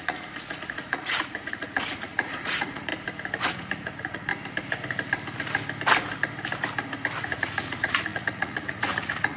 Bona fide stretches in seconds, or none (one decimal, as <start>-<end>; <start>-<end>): 2.9-3.4; 4.3-7.2